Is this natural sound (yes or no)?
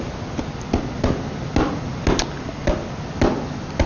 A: yes